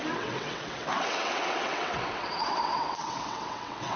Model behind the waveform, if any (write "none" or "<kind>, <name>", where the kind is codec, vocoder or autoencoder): vocoder, WaveNeXt